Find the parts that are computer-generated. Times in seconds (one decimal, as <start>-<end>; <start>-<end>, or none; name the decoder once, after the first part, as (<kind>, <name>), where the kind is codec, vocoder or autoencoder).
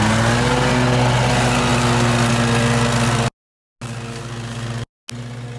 none